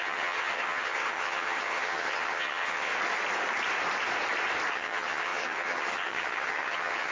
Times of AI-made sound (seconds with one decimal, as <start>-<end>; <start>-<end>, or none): 0.0-2.9; 4.7-7.1